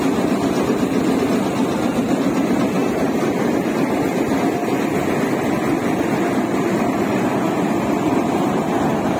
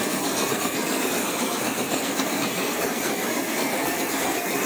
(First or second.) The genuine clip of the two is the first